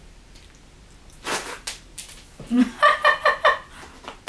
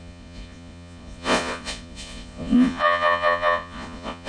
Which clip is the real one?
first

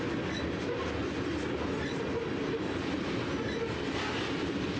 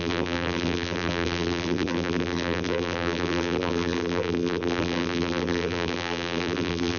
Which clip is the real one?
first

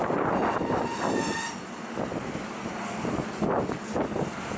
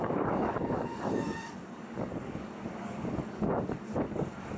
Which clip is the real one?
first